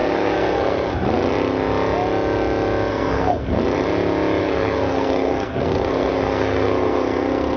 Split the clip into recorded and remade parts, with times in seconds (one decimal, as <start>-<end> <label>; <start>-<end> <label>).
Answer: 0.0-0.9 remade; 0.9-2.9 recorded; 2.9-3.6 remade; 3.6-4.4 recorded; 4.4-7.6 remade